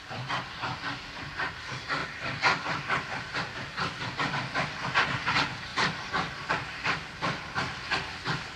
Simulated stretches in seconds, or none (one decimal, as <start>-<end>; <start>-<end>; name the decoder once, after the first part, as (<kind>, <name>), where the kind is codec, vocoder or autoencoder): none